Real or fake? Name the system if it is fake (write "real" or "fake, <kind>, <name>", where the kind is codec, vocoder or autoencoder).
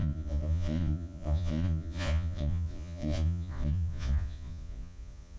fake, vocoder, Vocos